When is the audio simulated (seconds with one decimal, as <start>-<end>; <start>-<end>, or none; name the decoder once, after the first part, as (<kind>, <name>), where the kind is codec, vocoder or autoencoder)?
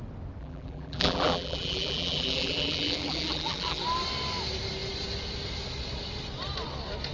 0.4-3.8 (vocoder, BigVGAN v2)